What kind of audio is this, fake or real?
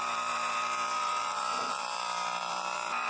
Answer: fake